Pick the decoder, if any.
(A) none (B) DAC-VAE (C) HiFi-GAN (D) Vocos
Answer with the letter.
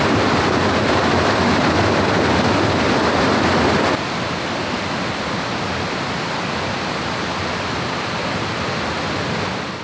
A